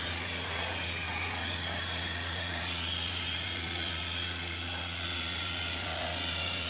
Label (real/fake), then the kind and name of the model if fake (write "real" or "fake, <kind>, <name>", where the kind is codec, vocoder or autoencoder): fake, vocoder, Vocos